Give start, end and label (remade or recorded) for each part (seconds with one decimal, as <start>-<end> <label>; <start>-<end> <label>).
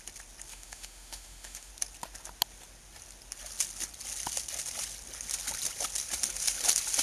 0.0-0.5 recorded; 0.5-1.7 remade; 1.7-7.0 recorded